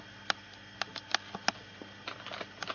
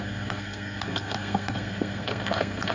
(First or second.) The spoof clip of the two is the second